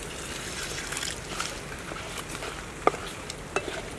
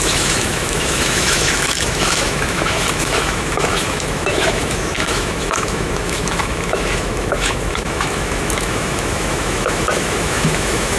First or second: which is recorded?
first